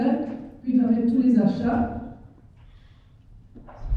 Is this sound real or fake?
fake